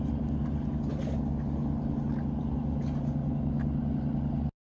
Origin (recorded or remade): recorded